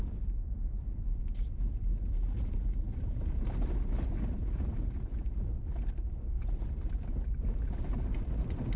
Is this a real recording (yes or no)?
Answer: no